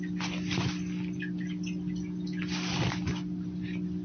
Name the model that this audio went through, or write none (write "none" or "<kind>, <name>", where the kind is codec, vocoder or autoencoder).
none